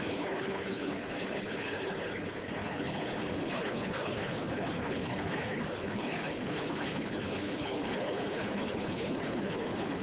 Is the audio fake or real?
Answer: fake